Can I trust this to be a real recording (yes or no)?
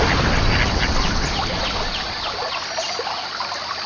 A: yes